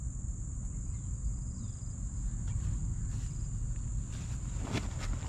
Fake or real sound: real